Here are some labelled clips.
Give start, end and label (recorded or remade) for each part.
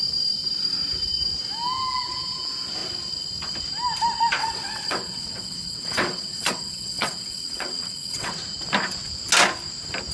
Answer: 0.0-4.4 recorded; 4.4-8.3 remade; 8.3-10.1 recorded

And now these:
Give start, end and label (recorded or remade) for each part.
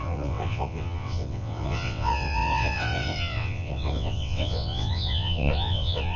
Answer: 0.0-6.2 remade